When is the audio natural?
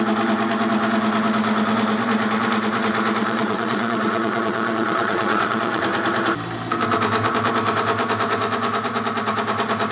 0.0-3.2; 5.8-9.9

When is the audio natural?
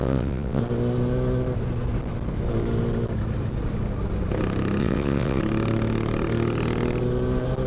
0.6-4.8; 5.4-7.7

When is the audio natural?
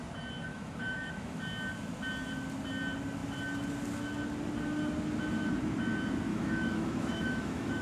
0.0-0.5; 1.4-6.3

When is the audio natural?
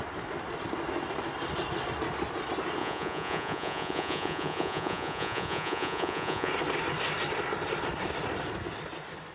0.0-2.8; 6.5-9.3